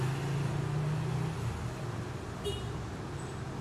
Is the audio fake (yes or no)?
no